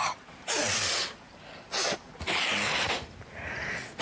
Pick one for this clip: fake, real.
real